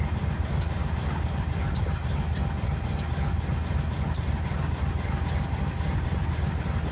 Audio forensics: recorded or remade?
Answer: recorded